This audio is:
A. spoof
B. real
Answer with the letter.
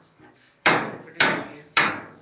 A